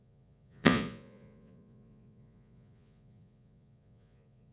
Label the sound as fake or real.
fake